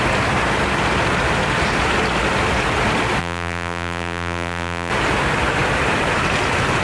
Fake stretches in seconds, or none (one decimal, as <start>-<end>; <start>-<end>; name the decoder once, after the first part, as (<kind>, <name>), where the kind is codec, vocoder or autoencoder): 3.2-4.9 (vocoder, BigVGAN v2)